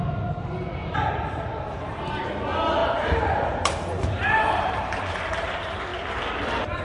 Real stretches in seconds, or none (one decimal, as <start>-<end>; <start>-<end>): 0.0-0.8; 2.0-2.8; 5.3-6.8